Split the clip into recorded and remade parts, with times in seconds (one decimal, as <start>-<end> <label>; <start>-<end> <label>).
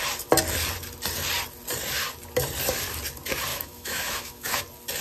0.0-3.5 recorded; 3.5-4.6 remade; 4.6-5.0 recorded